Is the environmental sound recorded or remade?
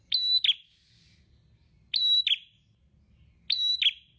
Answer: recorded